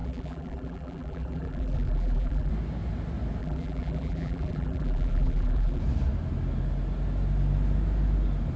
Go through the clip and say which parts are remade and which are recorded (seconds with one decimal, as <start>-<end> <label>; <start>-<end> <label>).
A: 0.0-2.5 remade; 2.5-3.4 recorded; 3.4-5.8 remade; 5.8-8.6 recorded